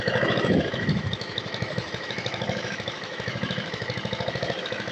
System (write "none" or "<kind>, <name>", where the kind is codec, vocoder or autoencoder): autoencoder, DAC-VAE